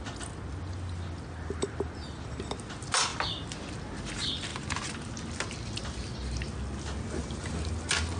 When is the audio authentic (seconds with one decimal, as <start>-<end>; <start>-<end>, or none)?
0.0-8.2